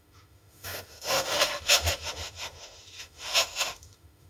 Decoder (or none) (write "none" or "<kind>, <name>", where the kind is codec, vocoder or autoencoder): autoencoder, DAC-VAE